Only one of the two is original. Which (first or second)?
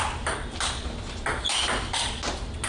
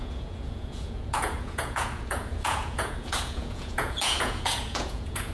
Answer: first